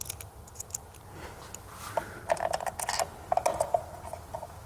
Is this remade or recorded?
recorded